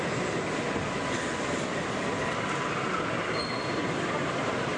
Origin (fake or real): real